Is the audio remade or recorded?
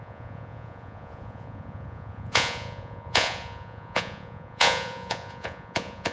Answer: remade